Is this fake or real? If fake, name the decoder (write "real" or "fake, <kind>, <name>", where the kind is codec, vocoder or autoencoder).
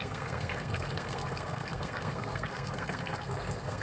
fake, codec, SNAC